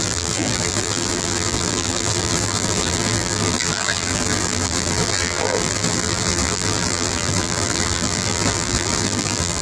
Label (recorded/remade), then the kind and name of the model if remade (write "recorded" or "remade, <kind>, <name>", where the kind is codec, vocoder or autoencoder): remade, vocoder, BigVGAN v2